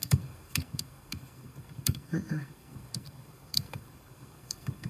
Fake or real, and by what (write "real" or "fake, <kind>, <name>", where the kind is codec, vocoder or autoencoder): fake, codec, SNAC